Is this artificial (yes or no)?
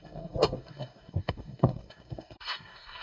yes